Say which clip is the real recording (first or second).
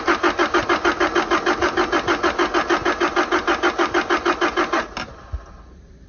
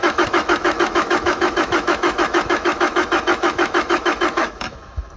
first